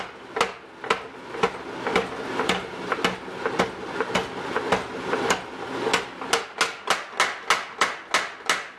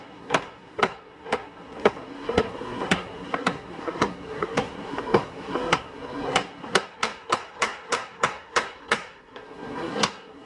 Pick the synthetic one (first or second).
second